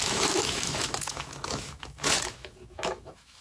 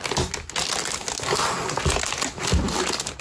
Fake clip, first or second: first